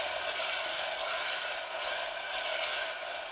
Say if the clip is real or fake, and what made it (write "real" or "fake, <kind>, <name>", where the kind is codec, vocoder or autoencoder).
real